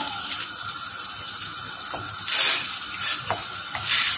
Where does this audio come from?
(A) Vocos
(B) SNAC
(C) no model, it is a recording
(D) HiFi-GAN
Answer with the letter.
C